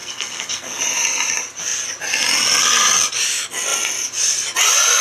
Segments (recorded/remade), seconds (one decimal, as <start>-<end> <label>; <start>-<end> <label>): 0.0-0.8 remade; 0.8-5.0 recorded